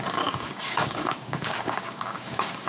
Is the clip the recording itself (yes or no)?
no